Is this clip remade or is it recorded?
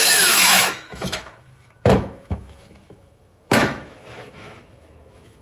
remade